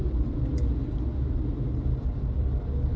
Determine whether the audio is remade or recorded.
recorded